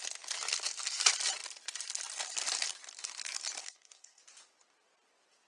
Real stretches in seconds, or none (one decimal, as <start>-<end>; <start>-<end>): 0.0-3.6; 4.2-5.5